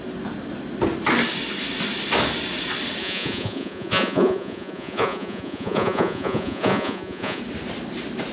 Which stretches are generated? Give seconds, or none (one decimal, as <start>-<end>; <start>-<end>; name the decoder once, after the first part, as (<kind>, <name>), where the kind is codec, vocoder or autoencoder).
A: 3.0-7.4 (vocoder, Vocos)